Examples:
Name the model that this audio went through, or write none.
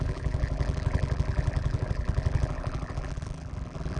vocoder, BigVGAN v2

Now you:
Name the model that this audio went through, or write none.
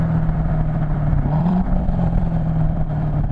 vocoder, BigVGAN v2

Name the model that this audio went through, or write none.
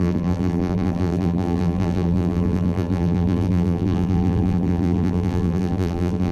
vocoder, BigVGAN v2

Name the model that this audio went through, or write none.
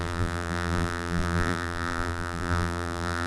vocoder, BigVGAN v2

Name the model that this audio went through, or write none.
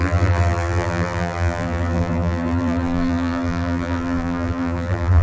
vocoder, BigVGAN v2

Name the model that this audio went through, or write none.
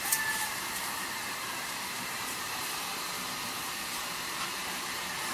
vocoder, BigVGAN v2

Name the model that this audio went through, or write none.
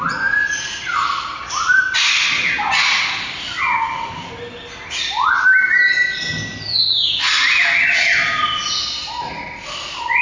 none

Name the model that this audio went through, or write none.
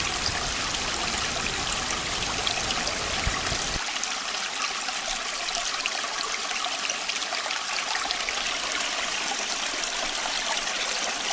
none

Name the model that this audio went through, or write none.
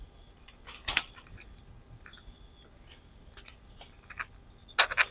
none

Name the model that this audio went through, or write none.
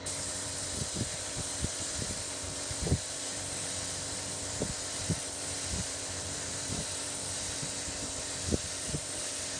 vocoder, BigVGAN v2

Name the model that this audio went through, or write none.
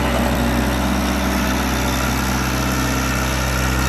none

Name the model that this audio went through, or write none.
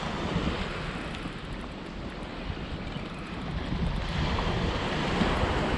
none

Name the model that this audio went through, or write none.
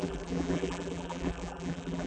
vocoder, BigVGAN v2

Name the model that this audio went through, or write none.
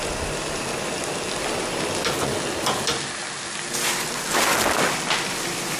none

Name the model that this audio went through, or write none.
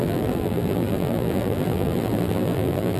vocoder, BigVGAN v2